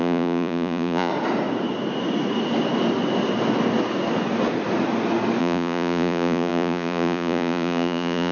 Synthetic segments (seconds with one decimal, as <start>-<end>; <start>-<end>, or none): 0.0-1.1; 5.4-8.3